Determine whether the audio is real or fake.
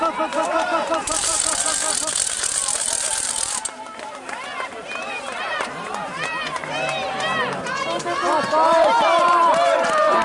fake